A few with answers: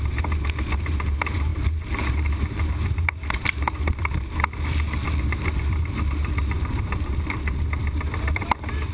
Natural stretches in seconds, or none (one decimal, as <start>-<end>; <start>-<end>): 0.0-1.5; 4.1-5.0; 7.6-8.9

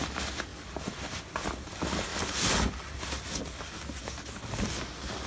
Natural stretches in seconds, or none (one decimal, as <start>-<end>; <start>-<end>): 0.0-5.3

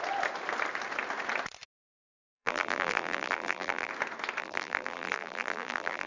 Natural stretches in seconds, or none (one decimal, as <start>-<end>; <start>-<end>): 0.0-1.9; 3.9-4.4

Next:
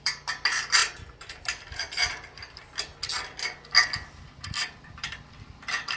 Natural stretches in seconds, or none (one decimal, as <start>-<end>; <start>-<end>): 2.9-4.3

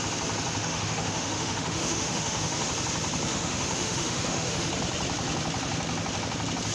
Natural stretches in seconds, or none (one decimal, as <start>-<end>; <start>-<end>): 0.0-0.6; 2.7-3.3; 4.7-6.7